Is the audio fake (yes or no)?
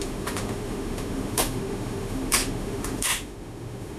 yes